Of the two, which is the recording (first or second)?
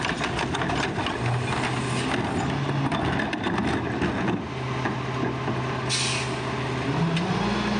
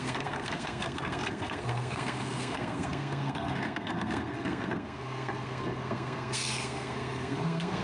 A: first